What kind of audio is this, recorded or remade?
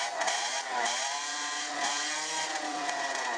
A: remade